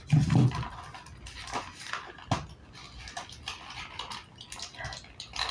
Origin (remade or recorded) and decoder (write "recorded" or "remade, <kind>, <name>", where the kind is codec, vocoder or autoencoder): recorded